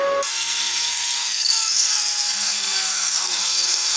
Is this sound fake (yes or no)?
yes